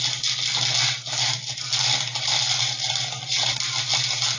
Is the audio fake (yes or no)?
no